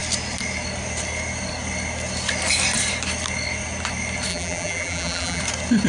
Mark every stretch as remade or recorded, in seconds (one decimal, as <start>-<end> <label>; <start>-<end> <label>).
0.0-4.3 recorded; 4.3-5.4 remade; 5.4-5.9 recorded